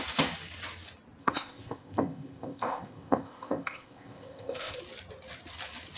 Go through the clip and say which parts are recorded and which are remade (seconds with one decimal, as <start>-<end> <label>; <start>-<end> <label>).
0.0-1.2 recorded; 1.2-4.8 remade; 4.8-6.0 recorded

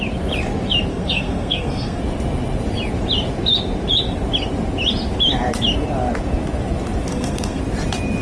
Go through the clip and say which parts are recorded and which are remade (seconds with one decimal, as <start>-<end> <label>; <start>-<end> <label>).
0.0-0.9 recorded; 0.9-2.0 remade; 2.0-7.1 recorded; 7.1-7.6 remade; 7.6-8.2 recorded

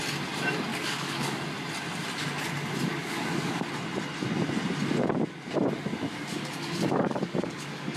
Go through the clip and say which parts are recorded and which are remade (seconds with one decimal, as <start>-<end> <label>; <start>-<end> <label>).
0.0-0.7 recorded; 0.7-1.4 remade; 1.4-3.0 recorded; 3.0-3.7 remade; 3.7-5.9 recorded; 5.9-8.0 remade

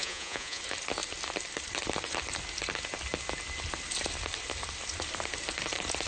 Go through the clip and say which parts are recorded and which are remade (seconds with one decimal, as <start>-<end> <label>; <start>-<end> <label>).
0.0-0.6 remade; 0.6-6.1 recorded

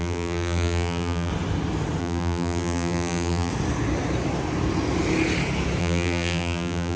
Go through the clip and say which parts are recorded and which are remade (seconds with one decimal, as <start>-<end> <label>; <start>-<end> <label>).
0.0-1.3 remade; 1.3-2.0 recorded; 2.0-3.5 remade; 3.5-5.8 recorded; 5.8-7.0 remade

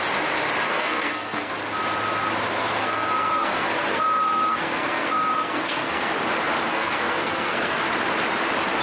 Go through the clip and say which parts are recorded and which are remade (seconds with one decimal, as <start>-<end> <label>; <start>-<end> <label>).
0.0-0.7 recorded; 0.7-1.5 remade; 1.5-2.6 recorded; 2.6-6.1 remade; 6.1-6.7 recorded; 6.7-7.8 remade; 7.8-8.8 recorded

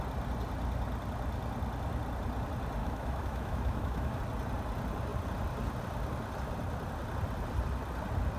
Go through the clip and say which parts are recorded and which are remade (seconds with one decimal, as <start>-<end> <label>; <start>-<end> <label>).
0.0-2.8 recorded; 2.8-4.2 remade; 4.2-8.4 recorded